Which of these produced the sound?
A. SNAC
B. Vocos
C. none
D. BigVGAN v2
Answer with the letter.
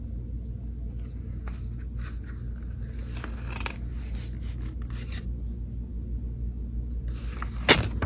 C